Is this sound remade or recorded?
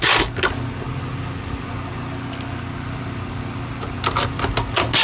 recorded